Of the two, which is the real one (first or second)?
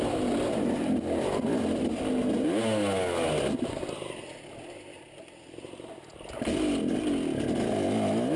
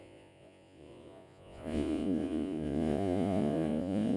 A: first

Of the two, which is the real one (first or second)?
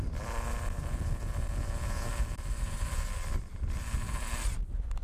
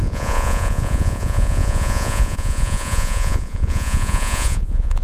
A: first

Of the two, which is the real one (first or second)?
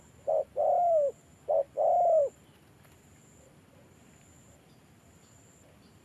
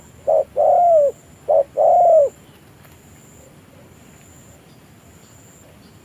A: second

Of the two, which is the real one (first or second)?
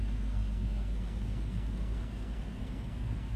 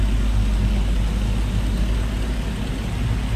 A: second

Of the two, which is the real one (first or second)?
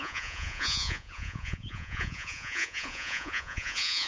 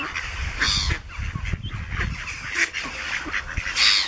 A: second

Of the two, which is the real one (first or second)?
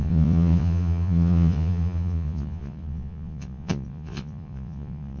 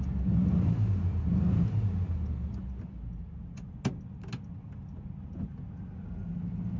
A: second